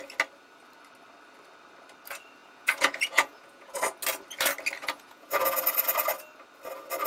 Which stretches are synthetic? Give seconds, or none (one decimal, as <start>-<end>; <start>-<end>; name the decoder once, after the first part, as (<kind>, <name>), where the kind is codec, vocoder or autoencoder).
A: 2.4-3.8 (vocoder, Vocos); 4.8-5.6